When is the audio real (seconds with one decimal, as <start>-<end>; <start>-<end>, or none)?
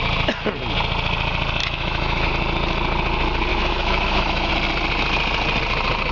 0.0-1.6; 2.3-3.5; 4.5-6.1